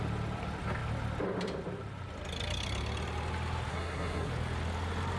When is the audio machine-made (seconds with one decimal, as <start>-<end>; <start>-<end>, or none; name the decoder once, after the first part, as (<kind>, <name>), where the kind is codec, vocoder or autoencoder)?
3.7-4.3 (codec, SNAC)